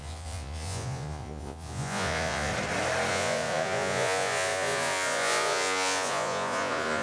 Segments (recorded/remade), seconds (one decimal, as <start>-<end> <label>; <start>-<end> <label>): 0.0-2.5 remade; 2.5-3.1 recorded; 3.1-7.0 remade